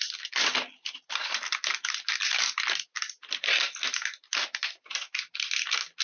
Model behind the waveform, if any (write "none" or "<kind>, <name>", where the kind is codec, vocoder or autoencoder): none